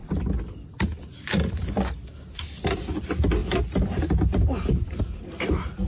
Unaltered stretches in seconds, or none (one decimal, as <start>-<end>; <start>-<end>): 0.0-5.9